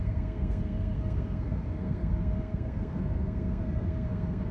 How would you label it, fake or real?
fake